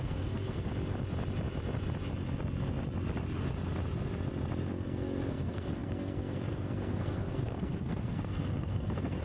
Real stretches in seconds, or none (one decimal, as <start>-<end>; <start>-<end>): 0.7-4.7